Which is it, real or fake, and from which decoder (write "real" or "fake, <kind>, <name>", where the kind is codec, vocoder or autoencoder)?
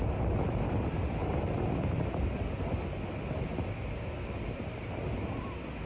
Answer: real